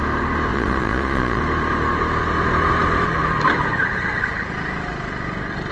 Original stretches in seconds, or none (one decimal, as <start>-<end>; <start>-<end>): 0.0-0.5; 1.4-5.7